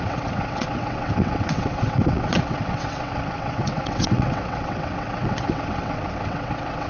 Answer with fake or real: fake